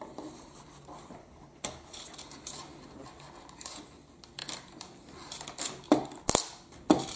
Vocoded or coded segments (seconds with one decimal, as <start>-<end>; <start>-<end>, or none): 1.2-2.0